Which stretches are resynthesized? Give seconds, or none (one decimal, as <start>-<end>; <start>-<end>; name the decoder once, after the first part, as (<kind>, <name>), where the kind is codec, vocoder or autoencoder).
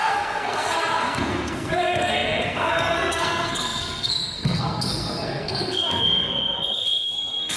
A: 0.0-7.6 (codec, SNAC)